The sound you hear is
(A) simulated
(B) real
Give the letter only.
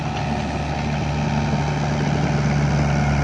B